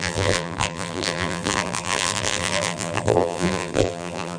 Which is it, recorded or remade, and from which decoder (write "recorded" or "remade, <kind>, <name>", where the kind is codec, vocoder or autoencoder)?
remade, vocoder, BigVGAN v2